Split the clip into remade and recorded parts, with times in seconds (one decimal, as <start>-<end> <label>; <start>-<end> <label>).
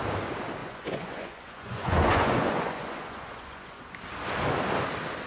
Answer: 0.0-0.6 recorded; 0.6-3.8 remade; 3.8-5.3 recorded